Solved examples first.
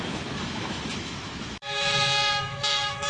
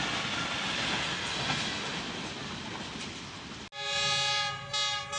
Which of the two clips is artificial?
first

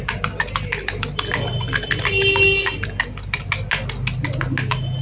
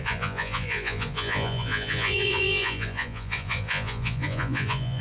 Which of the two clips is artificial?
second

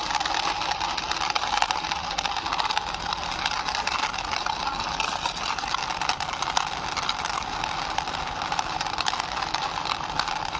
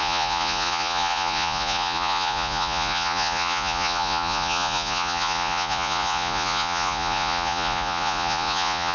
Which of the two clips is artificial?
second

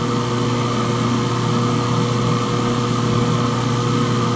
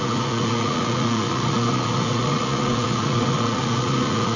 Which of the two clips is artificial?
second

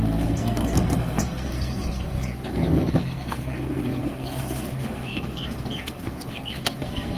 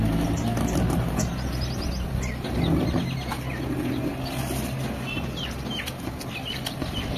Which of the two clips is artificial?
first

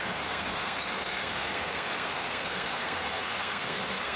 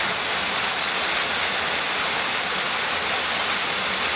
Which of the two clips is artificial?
first